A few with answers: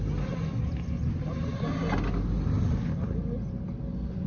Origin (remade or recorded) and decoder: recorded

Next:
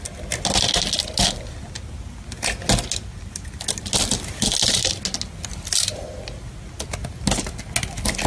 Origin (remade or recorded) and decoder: recorded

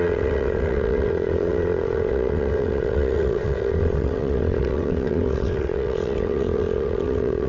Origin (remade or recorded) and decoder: remade, vocoder, WaveNeXt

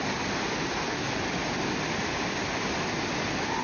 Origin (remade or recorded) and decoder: recorded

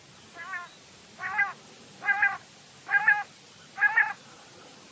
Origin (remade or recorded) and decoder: recorded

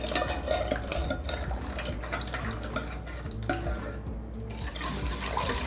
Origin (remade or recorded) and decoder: recorded